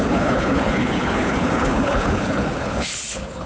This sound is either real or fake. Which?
fake